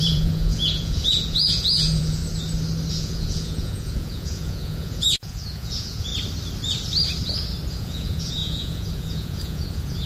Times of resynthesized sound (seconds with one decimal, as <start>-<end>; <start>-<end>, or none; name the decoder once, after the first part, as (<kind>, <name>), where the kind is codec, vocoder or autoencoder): 0.0-2.2 (vocoder, Vocos); 2.9-6.1; 7.7-10.1